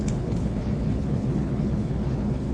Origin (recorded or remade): remade